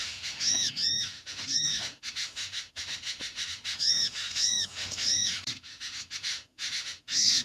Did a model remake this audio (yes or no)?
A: yes